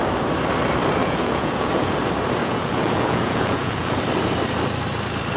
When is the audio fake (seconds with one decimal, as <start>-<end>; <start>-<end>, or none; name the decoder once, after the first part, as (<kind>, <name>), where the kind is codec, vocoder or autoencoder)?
1.0-2.0 (vocoder, Vocos); 2.4-4.0